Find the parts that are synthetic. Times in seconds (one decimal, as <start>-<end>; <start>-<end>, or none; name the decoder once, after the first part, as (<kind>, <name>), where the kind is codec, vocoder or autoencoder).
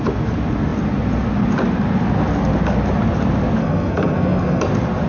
3.6-4.6 (codec, SNAC)